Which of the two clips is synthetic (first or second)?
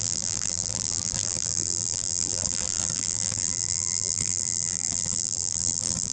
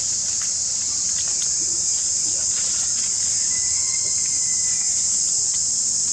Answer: first